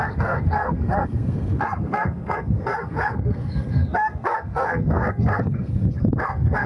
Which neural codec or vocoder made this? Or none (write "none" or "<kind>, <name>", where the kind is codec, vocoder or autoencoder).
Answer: codec, SNAC